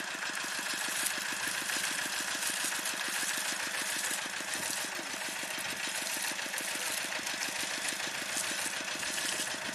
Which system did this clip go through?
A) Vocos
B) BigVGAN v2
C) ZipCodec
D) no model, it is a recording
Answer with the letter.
D